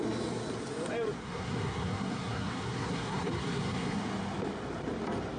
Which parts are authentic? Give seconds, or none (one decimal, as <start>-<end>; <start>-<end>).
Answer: 0.0-1.2; 4.0-5.4